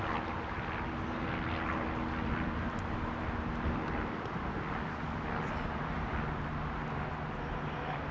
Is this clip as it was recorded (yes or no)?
yes